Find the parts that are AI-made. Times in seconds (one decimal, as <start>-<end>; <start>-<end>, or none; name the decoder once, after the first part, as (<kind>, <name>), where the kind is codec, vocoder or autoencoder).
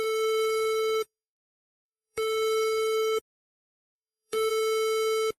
0.0-3.2 (codec, SNAC); 3.8-4.5